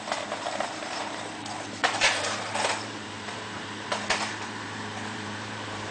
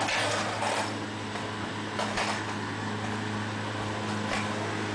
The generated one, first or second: first